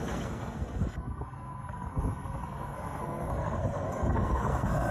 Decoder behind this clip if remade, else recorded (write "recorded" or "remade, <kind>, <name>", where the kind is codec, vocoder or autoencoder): remade, codec, SNAC